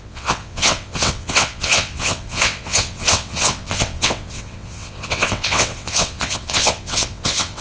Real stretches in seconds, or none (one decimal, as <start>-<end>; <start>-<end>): none